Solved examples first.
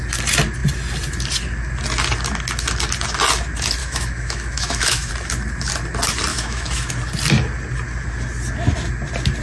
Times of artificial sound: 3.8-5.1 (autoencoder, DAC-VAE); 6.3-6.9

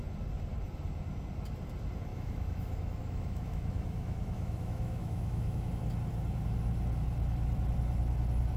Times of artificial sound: 2.1-5.7 (autoencoder, DAC-VAE)

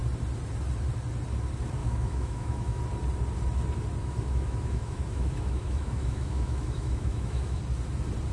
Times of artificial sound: 1.8-2.8 (autoencoder, DAC-VAE); 4.0-7.6

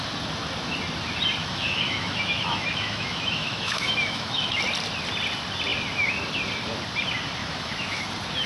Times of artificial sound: 1.4-4.6 (autoencoder, DAC-VAE); 7.4-8.0

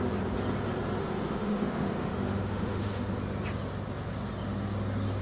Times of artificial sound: 1.0-3.1 (autoencoder, DAC-VAE)

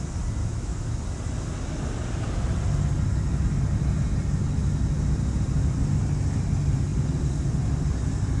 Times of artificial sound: 0.4-1.0 (autoencoder, DAC-VAE)

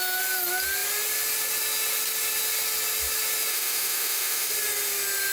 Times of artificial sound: 3.5-4.5 (autoencoder, DAC-VAE)